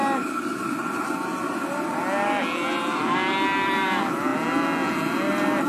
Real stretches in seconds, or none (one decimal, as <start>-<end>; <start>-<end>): 0.0-5.7

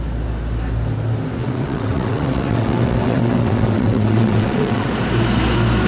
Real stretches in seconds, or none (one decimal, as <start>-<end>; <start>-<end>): 0.0-1.4; 4.9-5.9

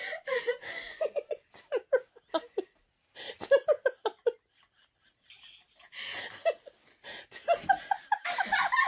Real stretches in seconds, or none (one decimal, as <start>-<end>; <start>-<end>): 1.5-8.9

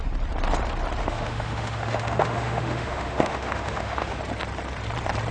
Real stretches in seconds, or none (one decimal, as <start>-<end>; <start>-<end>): 0.0-1.0; 4.2-5.3

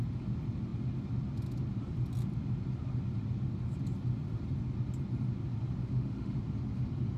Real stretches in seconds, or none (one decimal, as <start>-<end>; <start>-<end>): 0.0-5.8; 6.4-7.2

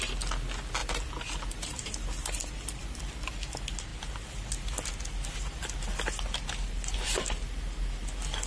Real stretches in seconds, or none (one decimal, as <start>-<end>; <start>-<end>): 0.0-8.5

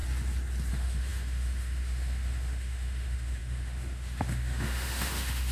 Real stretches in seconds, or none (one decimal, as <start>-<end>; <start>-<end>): 0.0-0.7

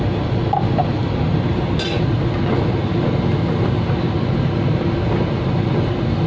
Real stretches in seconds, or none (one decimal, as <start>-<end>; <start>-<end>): 0.0-6.3